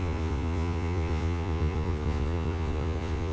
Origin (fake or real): fake